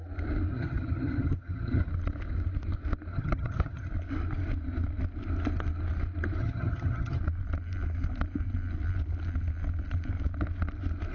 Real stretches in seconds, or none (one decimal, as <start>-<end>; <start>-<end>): 0.0-0.5; 1.9-3.1; 3.9-6.4; 7.2-11.1

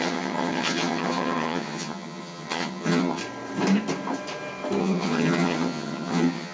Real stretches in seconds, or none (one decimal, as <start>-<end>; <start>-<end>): 3.2-4.8

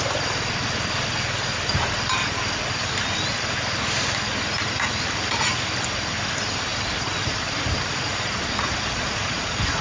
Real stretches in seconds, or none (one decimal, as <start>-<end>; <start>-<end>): 0.0-9.8

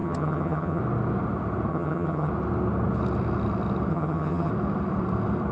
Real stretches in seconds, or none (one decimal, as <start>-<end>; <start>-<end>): 0.8-1.7; 2.3-3.9; 4.5-5.5

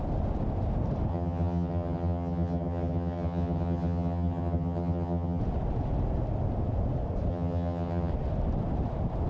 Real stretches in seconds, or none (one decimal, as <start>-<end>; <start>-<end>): 0.0-1.1; 5.4-7.3; 8.1-9.3

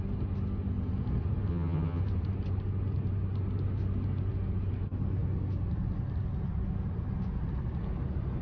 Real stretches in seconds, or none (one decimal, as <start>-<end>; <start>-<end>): 0.0-1.5; 2.0-8.4